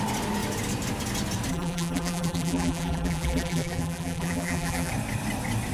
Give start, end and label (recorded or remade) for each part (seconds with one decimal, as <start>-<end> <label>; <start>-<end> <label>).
0.0-1.5 recorded; 1.5-4.9 remade; 4.9-5.7 recorded